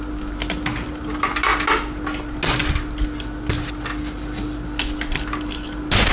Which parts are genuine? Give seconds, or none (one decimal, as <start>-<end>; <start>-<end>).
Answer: 0.0-6.1